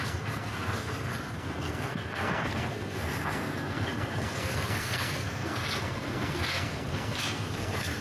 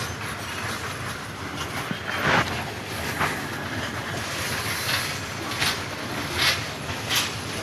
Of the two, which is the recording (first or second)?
second